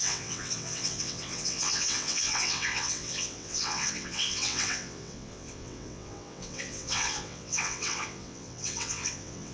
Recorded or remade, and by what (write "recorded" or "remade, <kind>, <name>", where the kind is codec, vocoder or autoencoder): remade, vocoder, WaveNeXt